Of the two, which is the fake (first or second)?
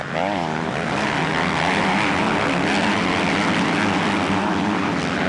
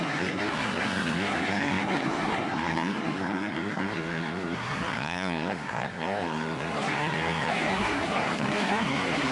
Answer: second